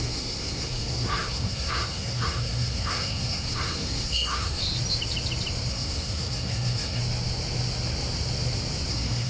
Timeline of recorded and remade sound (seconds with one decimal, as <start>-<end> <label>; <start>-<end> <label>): 0.0-4.6 remade; 4.6-5.7 recorded; 5.7-7.0 remade; 7.0-8.9 recorded; 8.9-9.3 remade